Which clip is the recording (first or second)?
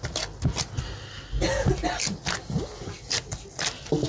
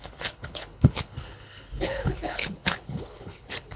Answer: first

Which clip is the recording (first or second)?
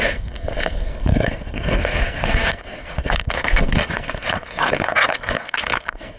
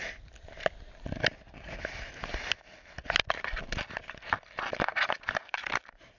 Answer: second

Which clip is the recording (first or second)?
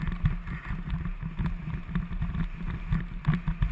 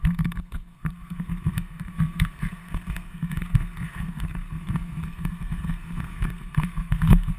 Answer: first